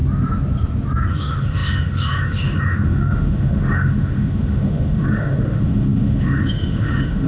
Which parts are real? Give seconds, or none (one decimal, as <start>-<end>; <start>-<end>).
0.0-1.1